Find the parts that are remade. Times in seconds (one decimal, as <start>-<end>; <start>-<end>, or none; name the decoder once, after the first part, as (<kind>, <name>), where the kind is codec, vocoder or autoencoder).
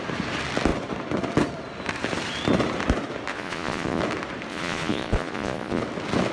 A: 3.3-4.0 (vocoder, Vocos); 4.5-5.8